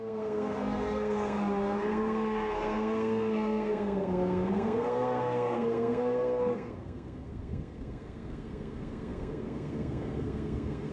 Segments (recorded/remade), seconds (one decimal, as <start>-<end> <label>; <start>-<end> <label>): 0.0-10.9 remade